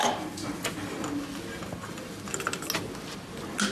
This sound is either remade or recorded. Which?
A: recorded